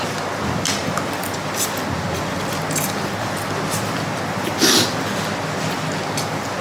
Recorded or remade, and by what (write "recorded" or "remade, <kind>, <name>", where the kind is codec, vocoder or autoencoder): recorded